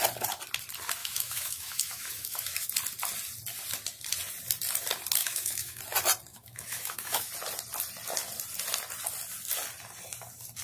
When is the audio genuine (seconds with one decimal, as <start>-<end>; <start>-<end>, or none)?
0.0-1.0; 2.7-5.2; 5.8-6.3; 7.3-10.6